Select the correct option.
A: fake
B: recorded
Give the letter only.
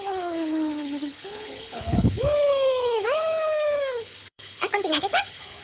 A